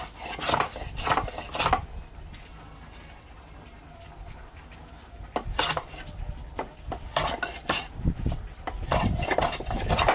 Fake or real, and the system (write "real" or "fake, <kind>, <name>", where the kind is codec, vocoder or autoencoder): real